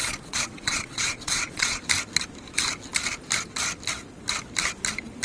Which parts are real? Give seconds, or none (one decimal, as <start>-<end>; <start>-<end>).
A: 1.8-5.2